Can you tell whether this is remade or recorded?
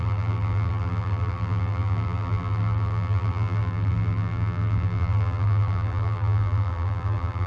remade